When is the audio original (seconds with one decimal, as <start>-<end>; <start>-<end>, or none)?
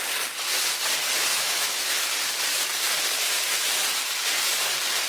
0.0-1.3; 2.1-5.1